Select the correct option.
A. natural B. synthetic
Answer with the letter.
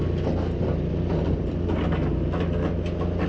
A